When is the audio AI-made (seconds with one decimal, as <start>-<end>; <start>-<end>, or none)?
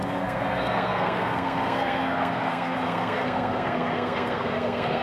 0.0-5.0